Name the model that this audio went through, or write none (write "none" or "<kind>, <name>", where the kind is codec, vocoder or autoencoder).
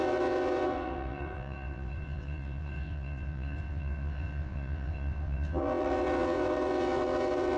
vocoder, WaveNeXt